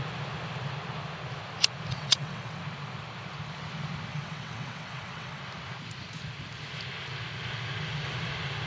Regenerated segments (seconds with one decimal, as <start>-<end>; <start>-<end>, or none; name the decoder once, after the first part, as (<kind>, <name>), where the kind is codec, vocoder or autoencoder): 1.9-2.6 (vocoder, WaveNeXt); 4.1-5.4